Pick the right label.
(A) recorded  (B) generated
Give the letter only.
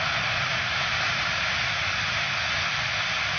A